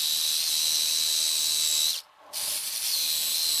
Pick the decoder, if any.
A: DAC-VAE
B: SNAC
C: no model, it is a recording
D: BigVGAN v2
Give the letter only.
C